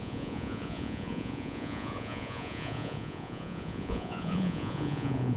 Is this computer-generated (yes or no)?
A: yes